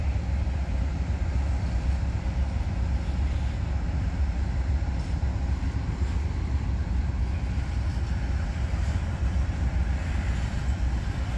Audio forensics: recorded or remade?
recorded